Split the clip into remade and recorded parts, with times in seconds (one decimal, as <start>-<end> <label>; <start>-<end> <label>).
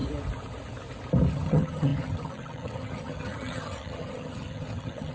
0.0-1.3 recorded; 1.3-5.1 remade